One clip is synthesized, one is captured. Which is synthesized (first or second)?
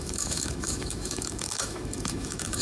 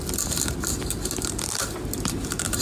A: first